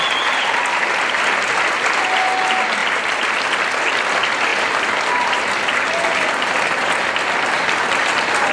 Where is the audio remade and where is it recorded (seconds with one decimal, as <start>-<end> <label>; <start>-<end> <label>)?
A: 0.0-2.8 recorded; 2.8-3.4 remade; 3.4-8.5 recorded